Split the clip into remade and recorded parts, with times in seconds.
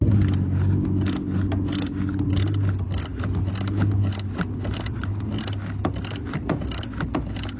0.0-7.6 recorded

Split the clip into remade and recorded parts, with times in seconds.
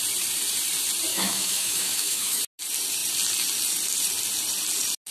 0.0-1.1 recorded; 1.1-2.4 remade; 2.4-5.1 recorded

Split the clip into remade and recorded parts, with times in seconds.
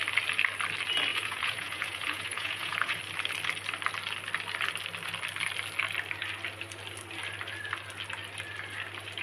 0.0-1.1 recorded; 1.1-3.0 remade; 3.0-9.2 recorded